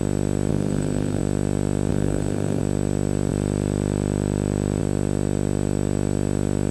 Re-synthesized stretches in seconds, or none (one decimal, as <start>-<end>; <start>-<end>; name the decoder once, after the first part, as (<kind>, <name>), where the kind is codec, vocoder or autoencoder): 0.5-1.2 (codec, SNAC); 1.9-2.6

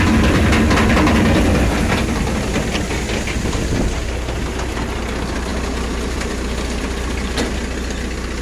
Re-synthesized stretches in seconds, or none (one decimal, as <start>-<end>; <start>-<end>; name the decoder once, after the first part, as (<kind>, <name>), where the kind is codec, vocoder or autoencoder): none

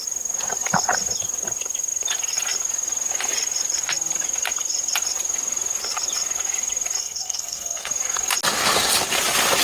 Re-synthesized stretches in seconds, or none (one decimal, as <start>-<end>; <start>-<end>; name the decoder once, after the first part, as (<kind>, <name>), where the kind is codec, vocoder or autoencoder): 7.0-7.9 (codec, SNAC)

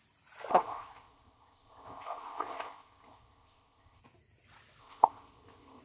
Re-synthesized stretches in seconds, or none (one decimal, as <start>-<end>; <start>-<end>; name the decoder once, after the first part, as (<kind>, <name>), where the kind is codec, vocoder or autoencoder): 0.5-4.0 (codec, ZipCodec); 4.8-5.8

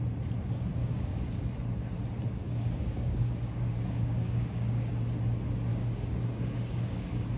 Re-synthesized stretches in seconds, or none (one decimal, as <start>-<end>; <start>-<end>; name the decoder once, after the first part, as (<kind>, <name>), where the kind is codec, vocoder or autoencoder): 0.8-1.4 (codec, DAC); 2.4-4.9; 5.7-7.4